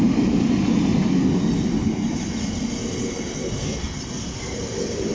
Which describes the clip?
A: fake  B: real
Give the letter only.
B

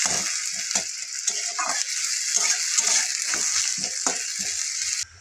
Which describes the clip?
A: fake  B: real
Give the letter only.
B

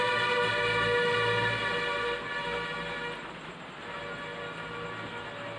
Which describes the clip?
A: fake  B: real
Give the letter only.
B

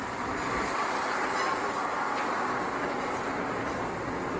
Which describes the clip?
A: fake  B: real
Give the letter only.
B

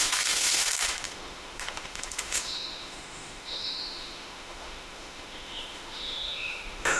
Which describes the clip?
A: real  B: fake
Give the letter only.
B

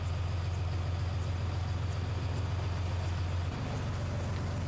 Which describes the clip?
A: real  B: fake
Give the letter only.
A